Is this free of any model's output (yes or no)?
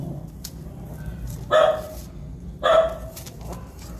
yes